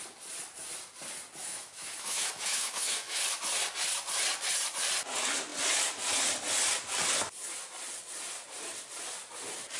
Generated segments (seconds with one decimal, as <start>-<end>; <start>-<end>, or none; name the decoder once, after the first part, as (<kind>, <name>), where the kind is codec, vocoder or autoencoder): 1.4-3.2 (autoencoder, DAC-VAE)